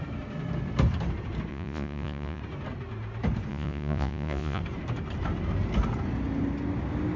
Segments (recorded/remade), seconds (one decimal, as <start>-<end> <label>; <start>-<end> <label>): 0.0-1.5 recorded; 1.5-2.4 remade; 2.4-3.5 recorded; 3.5-4.6 remade; 4.6-7.2 recorded